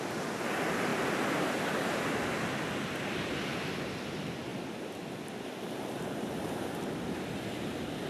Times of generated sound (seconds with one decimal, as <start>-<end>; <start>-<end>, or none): none